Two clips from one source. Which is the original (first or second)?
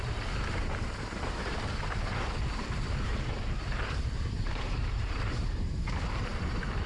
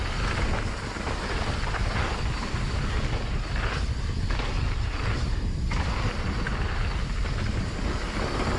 second